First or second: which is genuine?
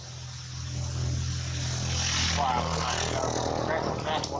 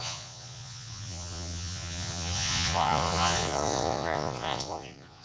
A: first